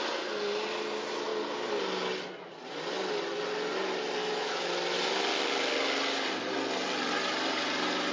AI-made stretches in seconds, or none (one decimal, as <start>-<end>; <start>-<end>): 4.2-4.7